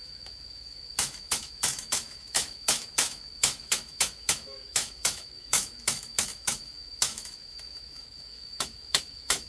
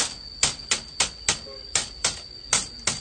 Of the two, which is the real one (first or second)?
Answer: second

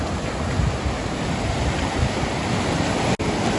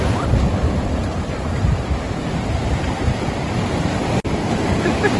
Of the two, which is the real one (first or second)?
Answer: first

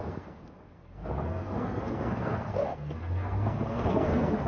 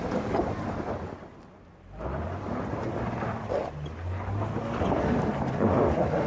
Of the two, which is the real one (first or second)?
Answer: second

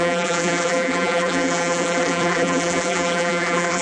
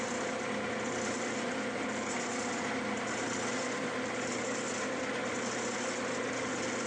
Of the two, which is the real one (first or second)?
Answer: second